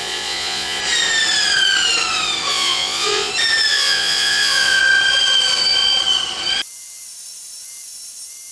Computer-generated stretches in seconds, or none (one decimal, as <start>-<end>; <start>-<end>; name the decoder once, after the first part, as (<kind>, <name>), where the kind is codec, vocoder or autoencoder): 0.0-0.8 (vocoder, Vocos); 2.5-3.3; 3.7-4.8